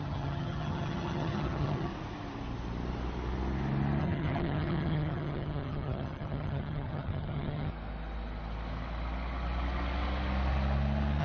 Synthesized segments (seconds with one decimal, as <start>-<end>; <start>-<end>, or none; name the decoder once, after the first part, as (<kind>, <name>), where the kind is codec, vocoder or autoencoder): 0.0-1.9 (vocoder, HiFi-GAN); 4.0-7.7